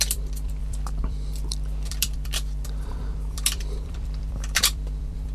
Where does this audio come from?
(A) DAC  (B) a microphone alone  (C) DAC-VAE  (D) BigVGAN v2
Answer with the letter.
D